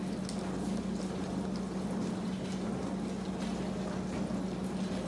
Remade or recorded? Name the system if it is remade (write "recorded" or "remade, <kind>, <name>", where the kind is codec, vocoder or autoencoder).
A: recorded